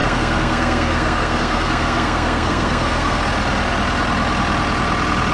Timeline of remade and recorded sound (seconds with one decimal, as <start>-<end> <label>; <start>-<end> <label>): 0.0-3.2 remade; 3.2-5.3 recorded